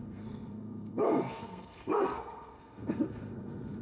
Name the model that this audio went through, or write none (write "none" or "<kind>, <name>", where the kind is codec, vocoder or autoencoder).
codec, SNAC